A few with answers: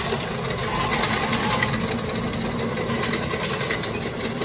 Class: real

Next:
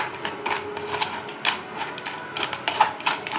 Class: real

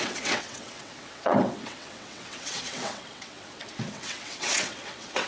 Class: fake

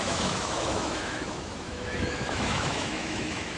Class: fake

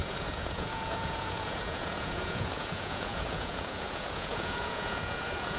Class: fake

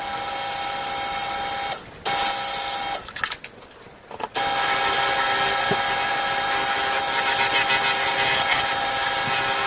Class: real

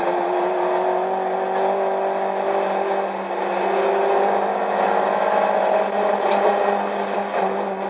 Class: real